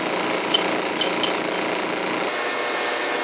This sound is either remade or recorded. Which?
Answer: recorded